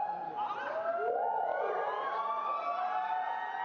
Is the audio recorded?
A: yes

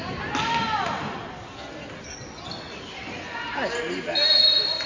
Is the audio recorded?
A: yes